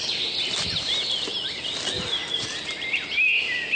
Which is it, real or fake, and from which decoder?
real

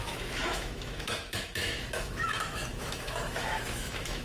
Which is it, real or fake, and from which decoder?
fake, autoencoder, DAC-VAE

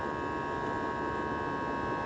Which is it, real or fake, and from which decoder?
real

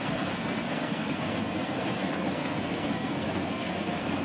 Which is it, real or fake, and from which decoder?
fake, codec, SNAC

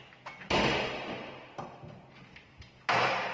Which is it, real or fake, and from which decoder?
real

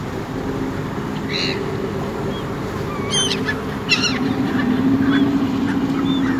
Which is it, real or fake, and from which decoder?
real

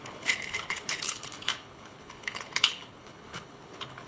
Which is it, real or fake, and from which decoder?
fake, codec, HILCodec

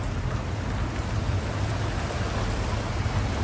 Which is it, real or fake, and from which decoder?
real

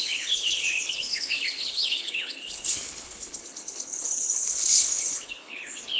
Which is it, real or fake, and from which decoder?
fake, codec, HILCodec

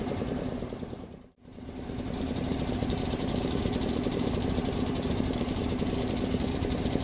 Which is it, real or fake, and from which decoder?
fake, vocoder, BigVGAN v2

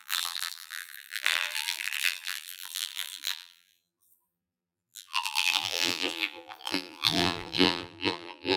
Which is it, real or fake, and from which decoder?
fake, vocoder, BigVGAN v2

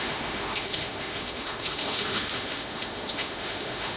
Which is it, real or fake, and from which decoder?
fake, autoencoder, DAC-VAE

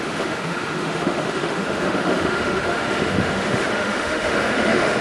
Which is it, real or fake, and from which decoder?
fake, autoencoder, DAC-VAE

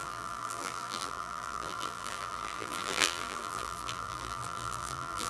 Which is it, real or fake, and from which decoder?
fake, vocoder, BigVGAN v2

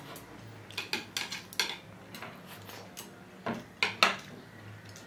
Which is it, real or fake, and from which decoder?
real